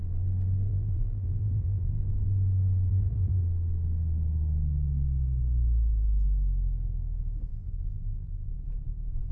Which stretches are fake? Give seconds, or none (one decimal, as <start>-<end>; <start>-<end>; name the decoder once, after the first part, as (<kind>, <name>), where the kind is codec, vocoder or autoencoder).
0.7-2.0 (vocoder, BigVGAN v2); 2.9-3.4; 7.5-8.5